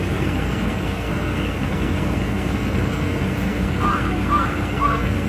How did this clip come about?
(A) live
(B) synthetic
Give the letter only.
B